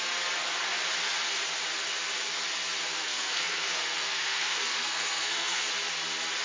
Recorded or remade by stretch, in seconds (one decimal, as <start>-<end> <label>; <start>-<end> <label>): 0.0-3.0 recorded; 3.0-5.7 remade; 5.7-6.4 recorded